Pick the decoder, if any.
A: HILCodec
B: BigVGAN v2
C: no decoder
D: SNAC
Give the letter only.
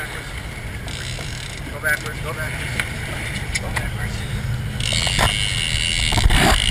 C